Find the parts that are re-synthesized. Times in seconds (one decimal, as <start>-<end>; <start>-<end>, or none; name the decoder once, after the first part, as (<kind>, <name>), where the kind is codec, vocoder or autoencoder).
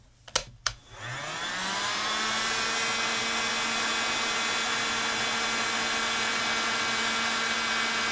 0.4-1.0 (autoencoder, DAC-VAE)